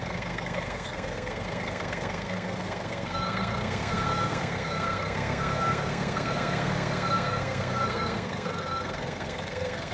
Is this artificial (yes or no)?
yes